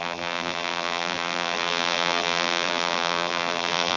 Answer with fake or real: fake